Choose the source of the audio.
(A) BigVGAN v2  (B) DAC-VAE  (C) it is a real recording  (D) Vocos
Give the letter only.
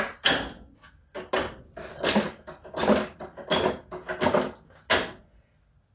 C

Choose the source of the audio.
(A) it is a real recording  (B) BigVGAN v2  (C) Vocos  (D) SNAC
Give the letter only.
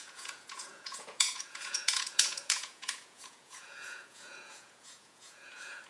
C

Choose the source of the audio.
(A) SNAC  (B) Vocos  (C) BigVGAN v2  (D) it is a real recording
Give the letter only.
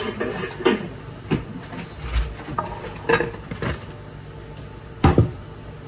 D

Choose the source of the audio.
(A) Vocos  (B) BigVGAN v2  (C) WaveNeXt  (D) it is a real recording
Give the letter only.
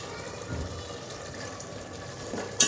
B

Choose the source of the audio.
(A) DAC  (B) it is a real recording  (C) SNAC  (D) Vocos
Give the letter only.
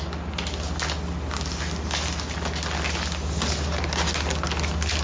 B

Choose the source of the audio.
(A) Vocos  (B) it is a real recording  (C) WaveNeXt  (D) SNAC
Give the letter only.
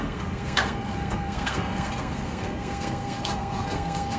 D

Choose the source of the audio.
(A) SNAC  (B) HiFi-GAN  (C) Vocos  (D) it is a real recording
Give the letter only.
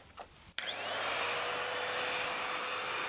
D